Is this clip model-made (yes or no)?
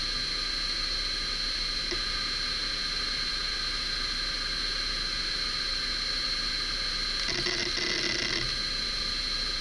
no